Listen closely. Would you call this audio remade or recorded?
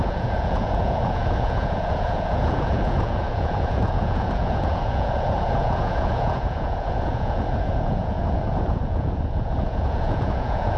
remade